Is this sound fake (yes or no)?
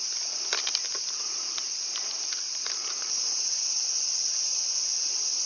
yes